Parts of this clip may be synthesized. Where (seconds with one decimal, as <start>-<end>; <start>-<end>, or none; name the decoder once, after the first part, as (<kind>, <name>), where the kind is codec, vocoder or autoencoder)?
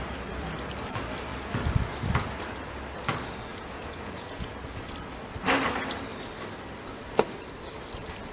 3.5-4.5 (vocoder, Vocos)